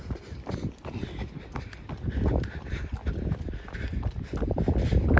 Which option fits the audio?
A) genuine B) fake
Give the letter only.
A